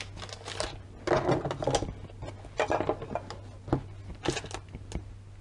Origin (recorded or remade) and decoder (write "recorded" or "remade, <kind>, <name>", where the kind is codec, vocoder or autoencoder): recorded